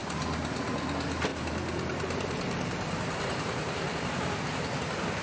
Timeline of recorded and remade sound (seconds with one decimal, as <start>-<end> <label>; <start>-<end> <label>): 0.0-1.3 recorded; 1.3-4.4 remade; 4.4-5.2 recorded